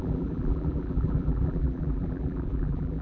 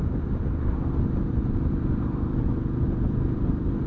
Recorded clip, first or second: second